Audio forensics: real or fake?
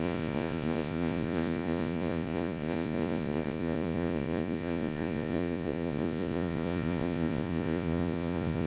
fake